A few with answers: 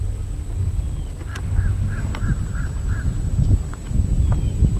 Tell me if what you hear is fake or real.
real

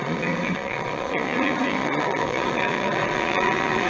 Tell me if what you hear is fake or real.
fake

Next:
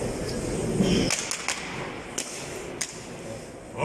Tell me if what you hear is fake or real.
real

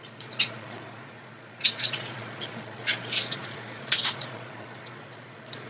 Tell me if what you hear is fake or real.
fake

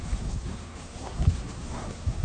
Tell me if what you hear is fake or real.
fake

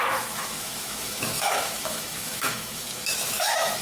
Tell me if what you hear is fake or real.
fake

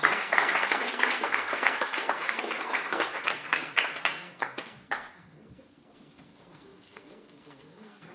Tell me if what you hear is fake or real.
fake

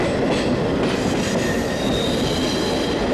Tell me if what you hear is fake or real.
fake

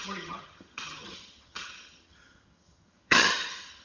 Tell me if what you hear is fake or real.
fake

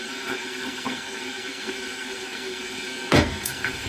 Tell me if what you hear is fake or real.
fake